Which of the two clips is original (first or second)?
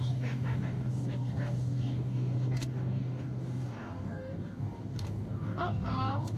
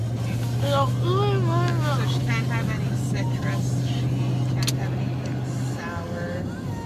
second